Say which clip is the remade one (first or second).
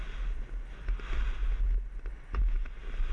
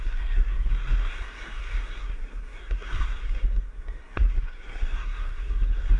second